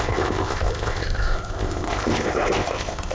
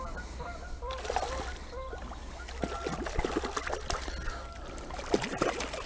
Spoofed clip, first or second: first